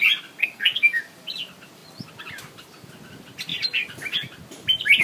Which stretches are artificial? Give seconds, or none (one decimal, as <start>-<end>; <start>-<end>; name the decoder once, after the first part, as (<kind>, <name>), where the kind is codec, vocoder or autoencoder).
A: 0.4-1.0 (codec, SNAC)